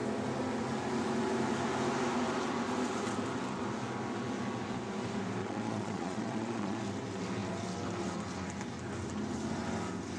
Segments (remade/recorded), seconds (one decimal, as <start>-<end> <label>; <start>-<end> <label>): 0.0-5.4 recorded; 5.4-6.8 remade; 6.8-10.2 recorded